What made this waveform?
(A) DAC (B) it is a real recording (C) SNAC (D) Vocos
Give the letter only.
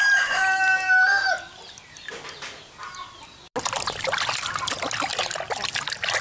B